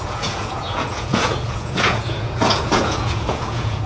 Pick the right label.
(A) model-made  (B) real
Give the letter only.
A